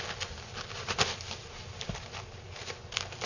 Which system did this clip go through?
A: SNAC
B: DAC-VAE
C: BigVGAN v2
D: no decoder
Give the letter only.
D